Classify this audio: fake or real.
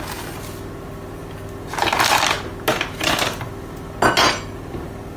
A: real